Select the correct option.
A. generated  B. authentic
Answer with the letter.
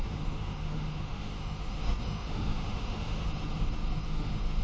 A